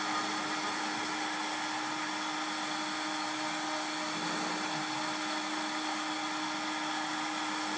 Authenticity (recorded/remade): recorded